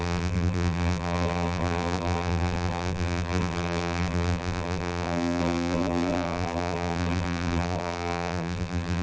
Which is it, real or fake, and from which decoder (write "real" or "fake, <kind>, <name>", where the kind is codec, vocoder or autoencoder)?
fake, vocoder, BigVGAN v2